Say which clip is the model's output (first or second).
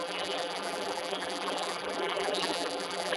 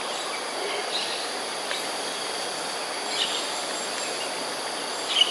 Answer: first